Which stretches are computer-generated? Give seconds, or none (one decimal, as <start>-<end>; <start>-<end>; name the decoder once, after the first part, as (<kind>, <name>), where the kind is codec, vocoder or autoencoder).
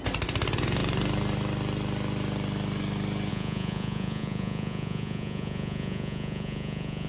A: 3.3-7.1 (vocoder, Vocos)